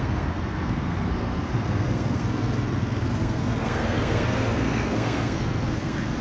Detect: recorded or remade remade